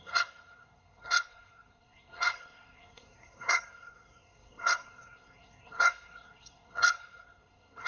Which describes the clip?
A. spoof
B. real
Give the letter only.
A